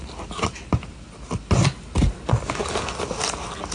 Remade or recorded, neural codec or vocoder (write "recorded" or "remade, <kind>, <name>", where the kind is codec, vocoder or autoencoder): recorded